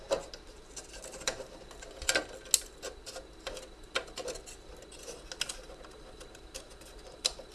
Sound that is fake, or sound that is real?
real